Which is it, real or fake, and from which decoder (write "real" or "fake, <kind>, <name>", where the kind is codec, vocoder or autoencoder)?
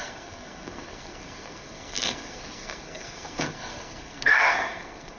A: fake, codec, SNAC